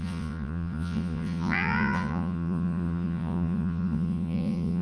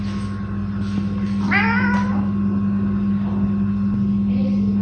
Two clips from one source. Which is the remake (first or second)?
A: first